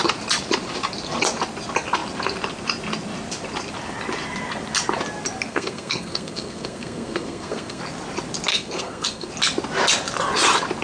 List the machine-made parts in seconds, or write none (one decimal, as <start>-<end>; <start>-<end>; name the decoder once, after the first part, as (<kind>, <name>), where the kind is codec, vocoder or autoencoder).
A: 5.5-7.8 (codec, SNAC); 8.5-9.3